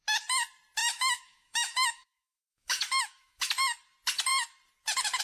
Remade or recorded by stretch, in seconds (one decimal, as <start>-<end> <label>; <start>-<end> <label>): 0.0-0.8 recorded; 0.8-3.5 remade; 3.5-5.2 recorded